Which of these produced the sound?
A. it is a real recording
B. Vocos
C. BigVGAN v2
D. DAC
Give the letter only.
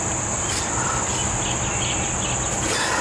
A